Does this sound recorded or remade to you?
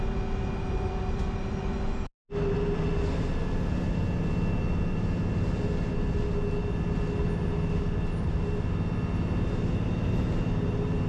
recorded